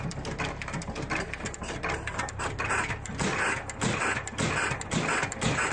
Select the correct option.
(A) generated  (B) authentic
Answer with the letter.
B